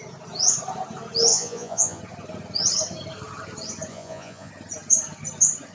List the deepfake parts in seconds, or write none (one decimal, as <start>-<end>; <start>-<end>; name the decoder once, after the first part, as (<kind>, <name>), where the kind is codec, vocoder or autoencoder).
1.3-2.0 (vocoder, Vocos); 3.9-4.5